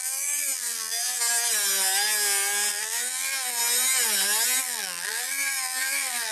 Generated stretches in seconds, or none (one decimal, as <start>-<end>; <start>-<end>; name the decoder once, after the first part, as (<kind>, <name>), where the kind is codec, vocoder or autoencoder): 0.0-1.2 (vocoder, BigVGAN v2); 2.7-3.6; 4.6-6.3